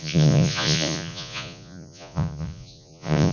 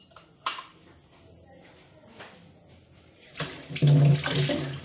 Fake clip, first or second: first